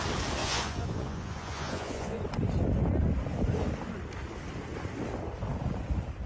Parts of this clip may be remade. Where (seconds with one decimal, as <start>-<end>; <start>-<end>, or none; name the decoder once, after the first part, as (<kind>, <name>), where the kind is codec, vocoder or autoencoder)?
0.4-2.2 (vocoder, Vocos)